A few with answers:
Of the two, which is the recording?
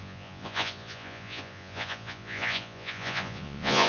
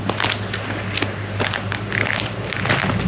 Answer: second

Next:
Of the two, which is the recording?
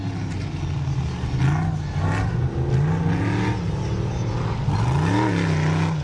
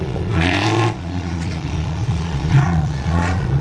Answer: first